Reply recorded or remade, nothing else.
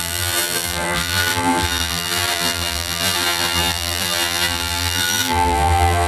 remade